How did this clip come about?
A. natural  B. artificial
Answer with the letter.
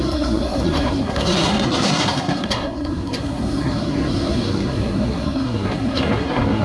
B